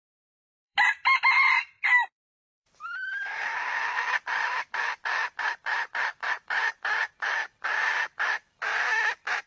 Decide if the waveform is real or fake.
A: fake